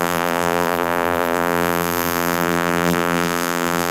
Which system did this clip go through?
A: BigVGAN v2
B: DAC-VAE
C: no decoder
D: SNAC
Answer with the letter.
A